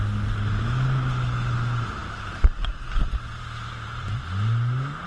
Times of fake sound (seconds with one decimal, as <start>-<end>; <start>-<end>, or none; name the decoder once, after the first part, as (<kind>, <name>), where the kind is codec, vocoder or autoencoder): none